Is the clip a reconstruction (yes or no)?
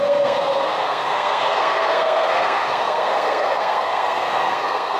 yes